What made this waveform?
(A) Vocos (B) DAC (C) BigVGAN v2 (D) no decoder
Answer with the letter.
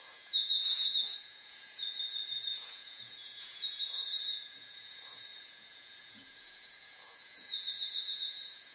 A